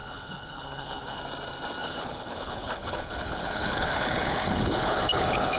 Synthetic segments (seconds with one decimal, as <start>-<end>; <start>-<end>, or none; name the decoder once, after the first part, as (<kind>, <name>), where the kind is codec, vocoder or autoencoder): 0.0-1.2 (codec, HILCodec); 1.8-5.6